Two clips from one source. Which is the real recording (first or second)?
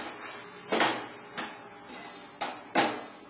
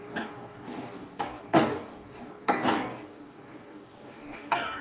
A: first